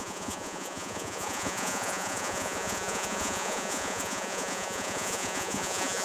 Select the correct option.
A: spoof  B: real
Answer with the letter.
A